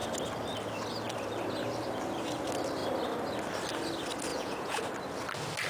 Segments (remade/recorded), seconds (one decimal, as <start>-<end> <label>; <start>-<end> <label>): 0.0-4.3 recorded; 4.3-4.8 remade; 4.8-5.7 recorded